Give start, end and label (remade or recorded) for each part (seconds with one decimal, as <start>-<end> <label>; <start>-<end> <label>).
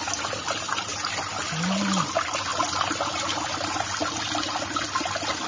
0.0-5.5 recorded